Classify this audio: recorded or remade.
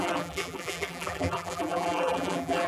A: remade